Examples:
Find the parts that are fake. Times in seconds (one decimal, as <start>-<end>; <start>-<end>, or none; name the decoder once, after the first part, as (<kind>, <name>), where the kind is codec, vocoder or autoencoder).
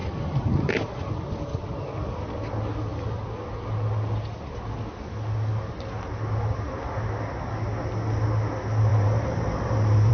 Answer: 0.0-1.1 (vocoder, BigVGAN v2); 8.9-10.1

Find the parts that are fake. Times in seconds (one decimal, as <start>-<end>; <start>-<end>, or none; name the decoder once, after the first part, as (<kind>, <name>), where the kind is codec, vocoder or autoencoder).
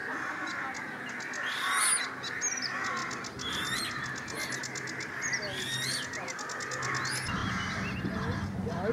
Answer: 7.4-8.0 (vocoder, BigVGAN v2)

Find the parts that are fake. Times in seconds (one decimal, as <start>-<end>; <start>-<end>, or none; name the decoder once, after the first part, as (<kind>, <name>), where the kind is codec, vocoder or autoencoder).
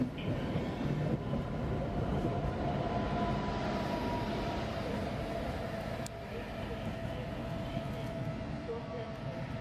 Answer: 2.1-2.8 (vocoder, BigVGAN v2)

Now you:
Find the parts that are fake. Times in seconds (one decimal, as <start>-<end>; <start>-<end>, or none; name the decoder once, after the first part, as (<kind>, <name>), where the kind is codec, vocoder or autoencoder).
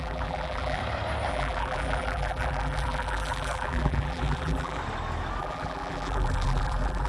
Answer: 0.0-0.8 (vocoder, BigVGAN v2); 1.3-4.8; 5.4-7.1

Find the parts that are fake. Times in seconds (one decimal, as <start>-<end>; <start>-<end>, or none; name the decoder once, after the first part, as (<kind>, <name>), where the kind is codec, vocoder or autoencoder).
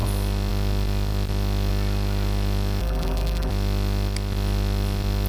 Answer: 2.8-3.5 (vocoder, BigVGAN v2)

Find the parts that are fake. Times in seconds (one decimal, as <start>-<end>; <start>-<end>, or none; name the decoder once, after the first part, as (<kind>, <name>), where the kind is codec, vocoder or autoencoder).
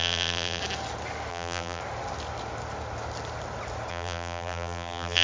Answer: 0.0-0.6 (vocoder, BigVGAN v2); 1.3-1.8; 3.9-5.2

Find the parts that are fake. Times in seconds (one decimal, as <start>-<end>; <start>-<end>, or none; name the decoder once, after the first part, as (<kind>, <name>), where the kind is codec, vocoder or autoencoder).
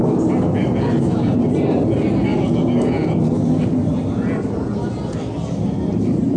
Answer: 1.0-2.3 (vocoder, BigVGAN v2); 5.9-6.4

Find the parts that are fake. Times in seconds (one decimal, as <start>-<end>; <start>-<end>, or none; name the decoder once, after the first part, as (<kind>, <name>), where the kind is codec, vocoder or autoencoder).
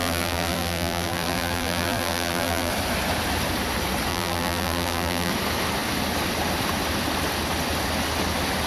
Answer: 0.0-2.7 (vocoder, BigVGAN v2); 4.1-5.3